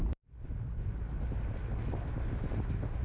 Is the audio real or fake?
real